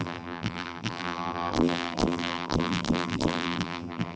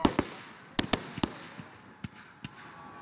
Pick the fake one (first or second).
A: first